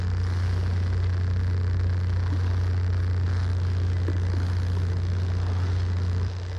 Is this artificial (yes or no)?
no